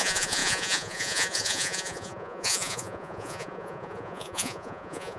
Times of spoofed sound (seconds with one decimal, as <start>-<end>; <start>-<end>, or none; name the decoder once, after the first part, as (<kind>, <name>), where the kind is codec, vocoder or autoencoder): 0.0-5.2 (vocoder, Vocos)